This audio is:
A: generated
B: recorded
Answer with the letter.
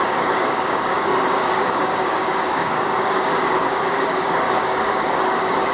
A